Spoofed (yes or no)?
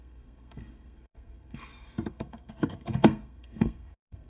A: yes